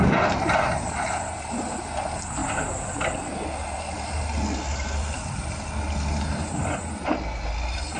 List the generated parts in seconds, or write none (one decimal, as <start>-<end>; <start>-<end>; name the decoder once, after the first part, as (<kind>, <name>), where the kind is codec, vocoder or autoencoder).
none